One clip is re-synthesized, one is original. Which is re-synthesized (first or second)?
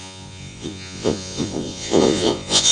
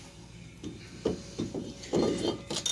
first